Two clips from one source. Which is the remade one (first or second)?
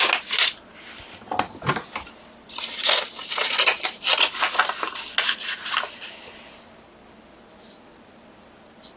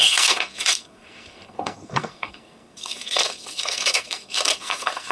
second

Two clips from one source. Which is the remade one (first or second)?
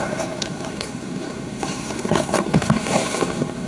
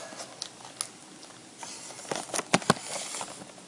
first